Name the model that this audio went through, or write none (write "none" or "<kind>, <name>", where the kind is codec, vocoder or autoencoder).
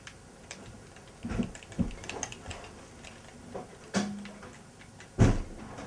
none